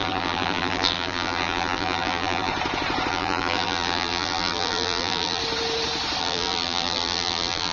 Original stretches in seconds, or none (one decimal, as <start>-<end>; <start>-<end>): 2.5-3.1; 5.4-6.2

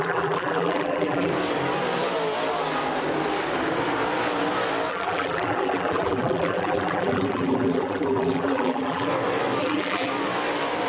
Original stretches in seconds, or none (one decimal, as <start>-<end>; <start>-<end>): 1.3-4.9; 9.1-9.6; 10.1-10.9

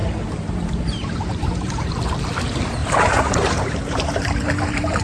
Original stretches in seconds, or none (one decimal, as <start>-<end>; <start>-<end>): 1.9-2.8

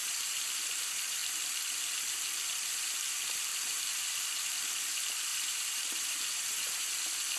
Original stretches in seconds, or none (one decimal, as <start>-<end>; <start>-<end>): 0.7-3.5; 4.0-5.3; 6.9-7.4

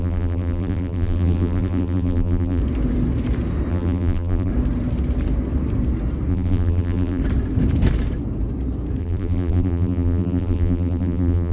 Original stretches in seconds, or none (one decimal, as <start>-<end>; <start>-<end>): 2.6-3.7; 4.5-6.3; 7.2-9.0

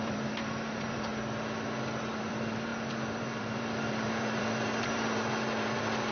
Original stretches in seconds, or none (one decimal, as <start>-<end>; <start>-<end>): 1.1-2.0